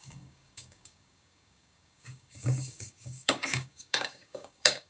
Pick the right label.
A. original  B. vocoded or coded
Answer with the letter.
B